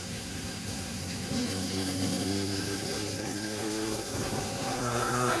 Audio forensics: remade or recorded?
remade